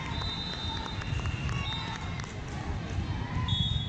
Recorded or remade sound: recorded